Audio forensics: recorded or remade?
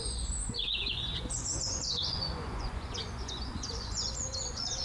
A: remade